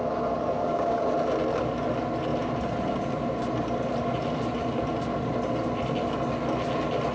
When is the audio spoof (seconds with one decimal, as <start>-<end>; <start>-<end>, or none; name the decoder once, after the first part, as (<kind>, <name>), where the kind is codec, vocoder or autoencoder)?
0.6-1.1 (codec, DAC)